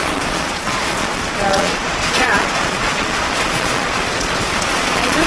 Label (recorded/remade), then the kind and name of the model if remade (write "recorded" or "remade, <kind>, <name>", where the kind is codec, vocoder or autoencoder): remade, vocoder, Vocos